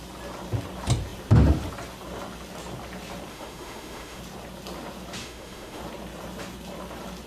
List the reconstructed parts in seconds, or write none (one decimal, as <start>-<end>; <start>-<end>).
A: 3.3-4.2; 5.2-5.8